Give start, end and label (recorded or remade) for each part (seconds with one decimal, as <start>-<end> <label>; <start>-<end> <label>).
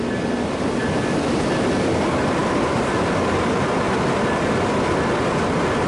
0.0-0.8 recorded; 0.8-1.9 remade; 1.9-2.4 recorded; 2.4-5.9 remade